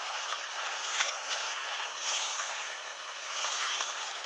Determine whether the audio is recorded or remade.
remade